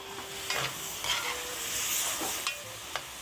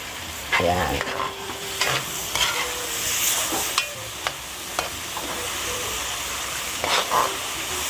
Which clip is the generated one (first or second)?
second